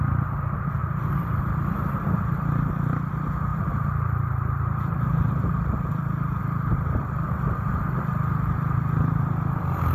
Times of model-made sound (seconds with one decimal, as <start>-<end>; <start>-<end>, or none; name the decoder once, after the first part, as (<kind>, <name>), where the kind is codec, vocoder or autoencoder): 3.5-6.4 (vocoder, BigVGAN v2)